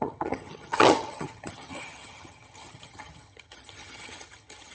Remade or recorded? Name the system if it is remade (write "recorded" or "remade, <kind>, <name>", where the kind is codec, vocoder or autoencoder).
remade, vocoder, HiFi-GAN